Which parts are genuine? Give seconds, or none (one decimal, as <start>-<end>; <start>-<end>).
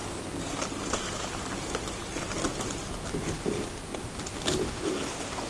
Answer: 0.0-4.6